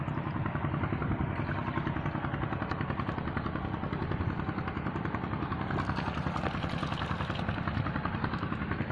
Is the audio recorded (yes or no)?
yes